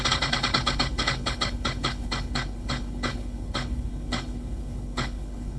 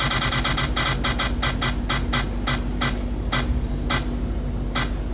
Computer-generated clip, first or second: first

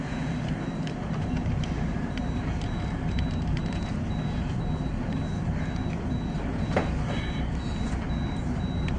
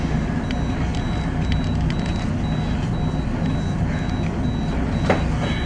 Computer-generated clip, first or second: first